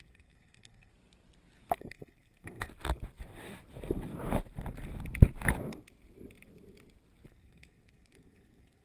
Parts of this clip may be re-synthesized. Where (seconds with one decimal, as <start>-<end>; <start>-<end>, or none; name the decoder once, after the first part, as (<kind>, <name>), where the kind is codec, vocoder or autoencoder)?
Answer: 0.0-0.9 (codec, SNAC); 1.8-2.7; 7.3-8.8

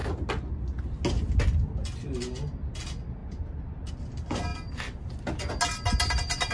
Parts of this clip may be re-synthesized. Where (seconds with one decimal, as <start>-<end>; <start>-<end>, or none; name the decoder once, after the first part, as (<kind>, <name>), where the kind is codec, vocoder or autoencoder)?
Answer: none

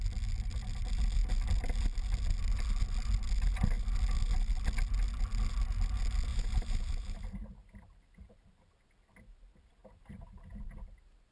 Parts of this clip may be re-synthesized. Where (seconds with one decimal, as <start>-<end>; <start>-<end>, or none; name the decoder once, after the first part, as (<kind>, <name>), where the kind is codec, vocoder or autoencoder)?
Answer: 6.3-8.4 (vocoder, BigVGAN v2); 9.8-10.7

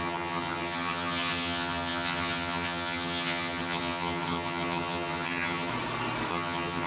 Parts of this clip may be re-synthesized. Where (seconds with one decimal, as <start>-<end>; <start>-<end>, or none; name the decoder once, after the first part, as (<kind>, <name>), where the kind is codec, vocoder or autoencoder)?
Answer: 0.0-5.7 (vocoder, HiFi-GAN); 6.3-6.9

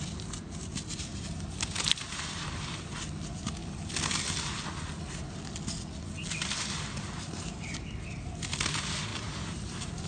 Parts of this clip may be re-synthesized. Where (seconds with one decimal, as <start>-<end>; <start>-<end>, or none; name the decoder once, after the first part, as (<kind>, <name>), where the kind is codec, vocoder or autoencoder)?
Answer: 1.1-2.9 (vocoder, BigVGAN v2); 9.1-10.1

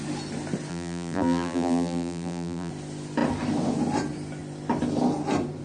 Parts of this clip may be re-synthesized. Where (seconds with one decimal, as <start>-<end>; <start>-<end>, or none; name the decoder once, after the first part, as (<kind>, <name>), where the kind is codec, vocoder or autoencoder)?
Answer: 0.7-2.7 (vocoder, BigVGAN v2)

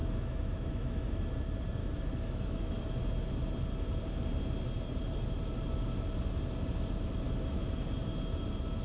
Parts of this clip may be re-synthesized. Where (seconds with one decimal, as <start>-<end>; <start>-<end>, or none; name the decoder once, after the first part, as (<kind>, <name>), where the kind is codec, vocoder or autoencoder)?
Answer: 0.0-1.1 (autoencoder, DAC-VAE); 1.8-3.0